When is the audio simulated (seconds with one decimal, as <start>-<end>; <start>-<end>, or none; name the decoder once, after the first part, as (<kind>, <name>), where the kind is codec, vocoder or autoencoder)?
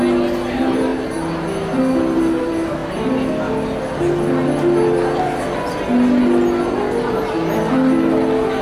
none